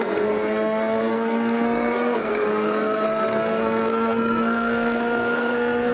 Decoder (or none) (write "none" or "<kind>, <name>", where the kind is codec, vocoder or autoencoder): codec, SNAC